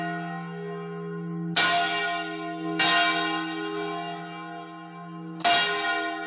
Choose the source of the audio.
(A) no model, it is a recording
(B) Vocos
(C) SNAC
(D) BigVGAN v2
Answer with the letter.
A